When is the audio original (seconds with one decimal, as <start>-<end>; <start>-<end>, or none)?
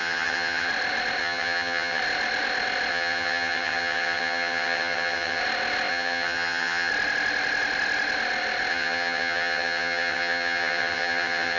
0.7-1.2; 2.0-2.9; 5.4-5.9; 6.9-8.7